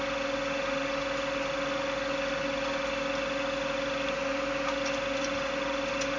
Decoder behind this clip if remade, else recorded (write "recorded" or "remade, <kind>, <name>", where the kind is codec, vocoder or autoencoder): recorded